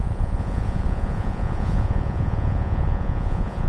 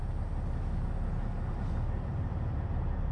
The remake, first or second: first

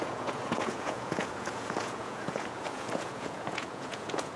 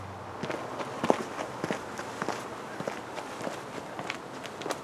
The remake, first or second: first